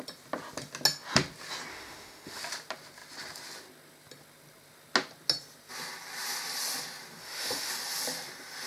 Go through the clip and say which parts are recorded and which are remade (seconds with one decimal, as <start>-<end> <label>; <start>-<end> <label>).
0.0-1.7 recorded; 1.7-2.4 remade; 2.4-7.2 recorded; 7.2-7.7 remade; 7.7-8.7 recorded